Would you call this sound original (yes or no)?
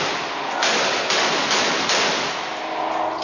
yes